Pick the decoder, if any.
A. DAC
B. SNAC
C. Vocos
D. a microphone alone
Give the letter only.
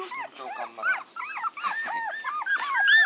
D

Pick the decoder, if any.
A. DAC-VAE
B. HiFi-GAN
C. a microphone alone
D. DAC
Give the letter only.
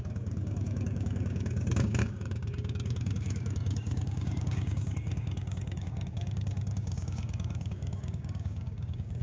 D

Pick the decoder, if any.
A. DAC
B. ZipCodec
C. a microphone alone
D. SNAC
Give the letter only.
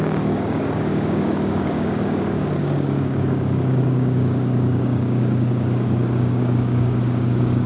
A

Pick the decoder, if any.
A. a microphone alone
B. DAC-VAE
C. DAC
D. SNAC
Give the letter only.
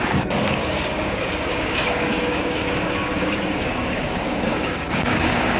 C